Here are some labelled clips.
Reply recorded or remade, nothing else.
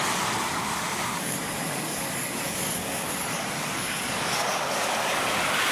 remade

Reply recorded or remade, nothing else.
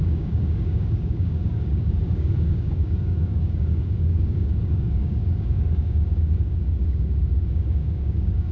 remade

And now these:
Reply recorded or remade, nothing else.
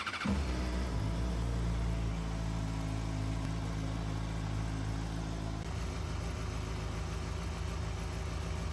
recorded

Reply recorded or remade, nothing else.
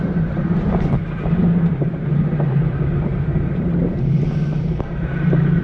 remade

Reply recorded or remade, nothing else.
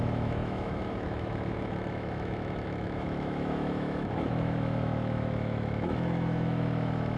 remade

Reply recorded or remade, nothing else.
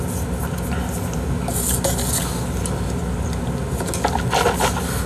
recorded